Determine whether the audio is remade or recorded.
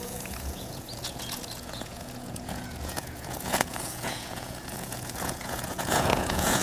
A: remade